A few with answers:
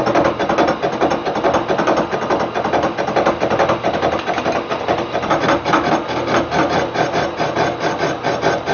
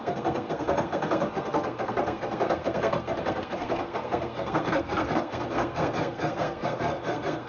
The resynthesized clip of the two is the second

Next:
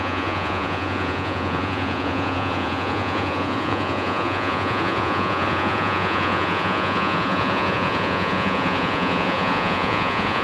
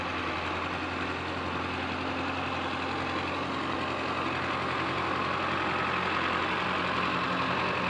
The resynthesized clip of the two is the first